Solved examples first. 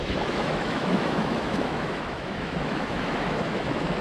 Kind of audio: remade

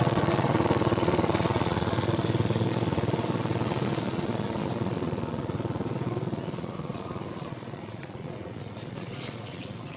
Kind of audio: remade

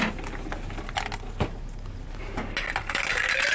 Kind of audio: recorded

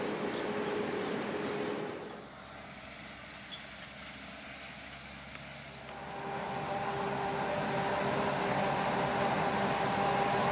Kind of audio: recorded